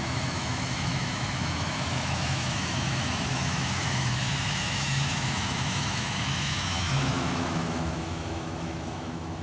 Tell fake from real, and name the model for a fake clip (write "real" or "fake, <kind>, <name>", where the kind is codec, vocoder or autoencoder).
fake, autoencoder, DAC-VAE